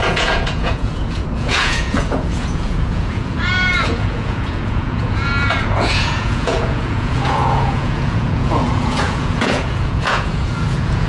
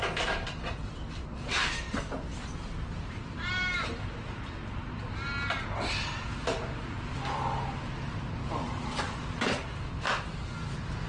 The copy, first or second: first